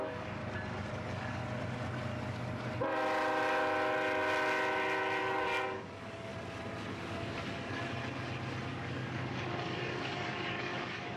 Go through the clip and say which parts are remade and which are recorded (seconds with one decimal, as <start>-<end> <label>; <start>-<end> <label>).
0.0-0.4 remade; 0.4-0.9 recorded; 0.9-1.4 remade; 1.4-5.2 recorded; 5.2-6.3 remade; 6.3-6.9 recorded; 6.9-8.0 remade; 8.0-8.7 recorded; 8.7-11.2 remade